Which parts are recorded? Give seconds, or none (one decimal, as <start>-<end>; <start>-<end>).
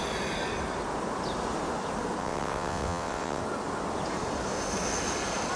0.0-2.2; 3.4-5.6